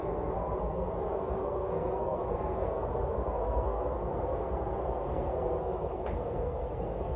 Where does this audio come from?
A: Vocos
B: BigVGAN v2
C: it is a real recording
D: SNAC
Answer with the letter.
D